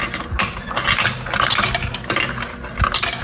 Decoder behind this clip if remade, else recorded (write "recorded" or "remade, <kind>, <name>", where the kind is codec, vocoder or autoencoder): recorded